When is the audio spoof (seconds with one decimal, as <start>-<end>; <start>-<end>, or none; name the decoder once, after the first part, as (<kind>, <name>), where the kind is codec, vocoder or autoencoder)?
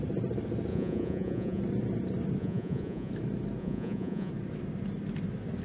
0.7-1.6 (vocoder, Vocos); 2.4-3.1; 3.6-4.3